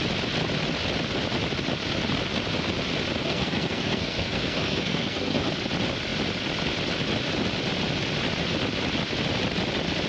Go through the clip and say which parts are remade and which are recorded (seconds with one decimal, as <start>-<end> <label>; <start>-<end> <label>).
0.0-3.2 recorded; 3.2-5.5 remade; 5.5-10.1 recorded